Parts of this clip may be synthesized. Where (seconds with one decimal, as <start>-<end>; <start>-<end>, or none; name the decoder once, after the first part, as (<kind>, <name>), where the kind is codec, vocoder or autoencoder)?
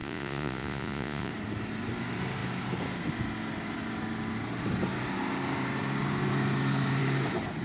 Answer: 0.0-1.3 (vocoder, Vocos)